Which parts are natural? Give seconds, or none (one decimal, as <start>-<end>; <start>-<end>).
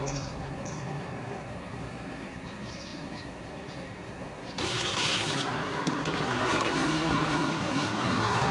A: none